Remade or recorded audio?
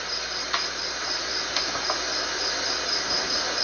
recorded